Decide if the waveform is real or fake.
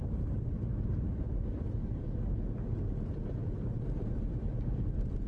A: fake